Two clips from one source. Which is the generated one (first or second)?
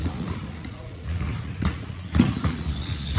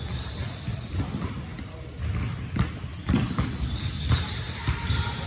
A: first